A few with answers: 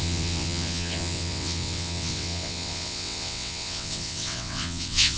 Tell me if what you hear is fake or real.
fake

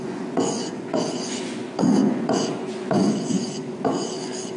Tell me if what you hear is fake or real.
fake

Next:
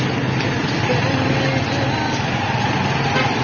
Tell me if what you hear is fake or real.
real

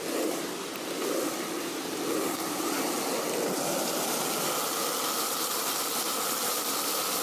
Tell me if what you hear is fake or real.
real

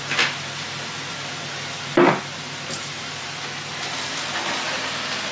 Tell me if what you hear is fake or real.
real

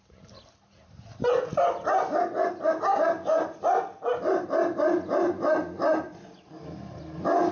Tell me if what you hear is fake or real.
real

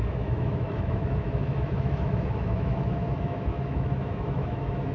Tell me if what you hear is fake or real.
fake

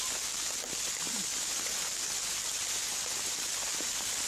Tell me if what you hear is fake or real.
real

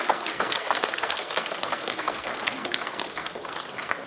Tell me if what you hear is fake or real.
fake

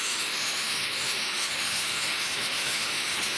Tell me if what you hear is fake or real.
fake